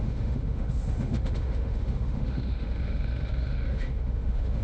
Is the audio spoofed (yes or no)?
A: yes